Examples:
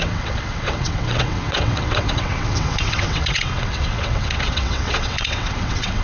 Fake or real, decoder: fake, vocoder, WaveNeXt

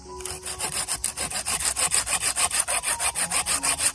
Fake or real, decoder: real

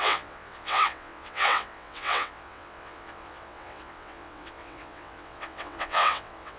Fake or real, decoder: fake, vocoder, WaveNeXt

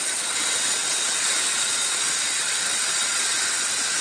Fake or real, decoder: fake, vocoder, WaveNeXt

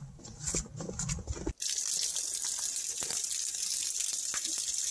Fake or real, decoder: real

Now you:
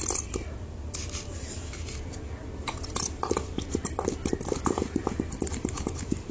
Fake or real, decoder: real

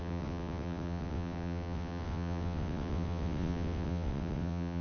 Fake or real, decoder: fake, vocoder, WaveNeXt